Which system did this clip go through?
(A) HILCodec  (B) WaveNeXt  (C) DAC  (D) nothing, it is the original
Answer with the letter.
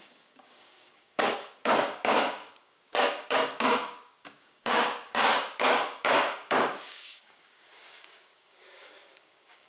C